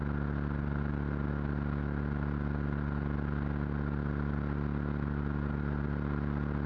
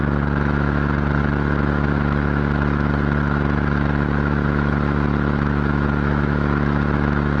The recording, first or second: first